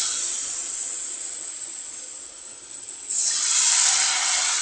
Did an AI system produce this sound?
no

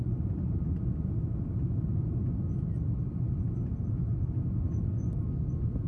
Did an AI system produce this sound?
no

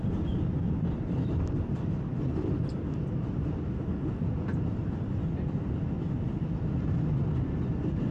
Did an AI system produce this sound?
no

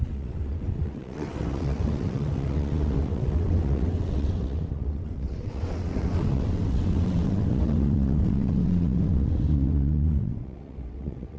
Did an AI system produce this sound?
yes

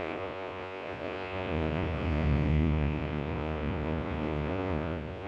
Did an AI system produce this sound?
yes